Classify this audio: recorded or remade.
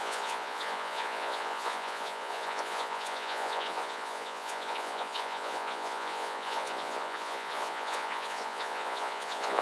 remade